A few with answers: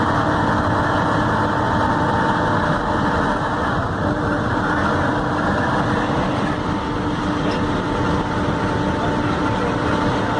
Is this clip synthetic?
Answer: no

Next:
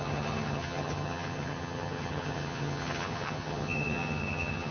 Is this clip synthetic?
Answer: yes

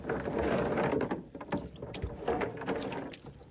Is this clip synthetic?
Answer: no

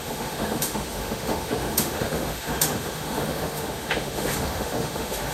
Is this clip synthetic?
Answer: yes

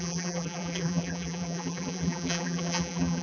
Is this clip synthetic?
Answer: yes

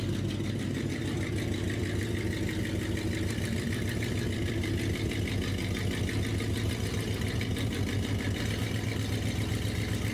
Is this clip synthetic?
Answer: yes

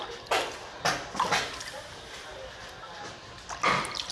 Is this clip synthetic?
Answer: no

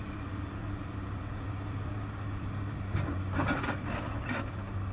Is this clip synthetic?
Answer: yes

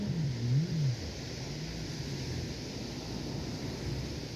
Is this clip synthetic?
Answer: no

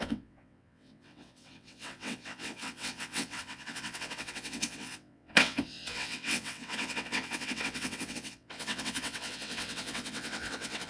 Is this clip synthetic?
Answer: yes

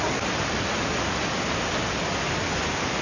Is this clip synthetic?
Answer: no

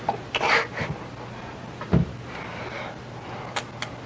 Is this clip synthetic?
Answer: no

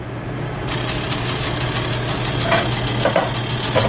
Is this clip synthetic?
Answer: no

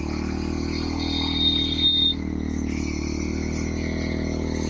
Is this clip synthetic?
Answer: no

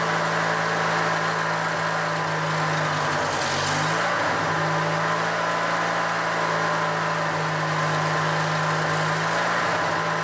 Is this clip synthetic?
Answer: no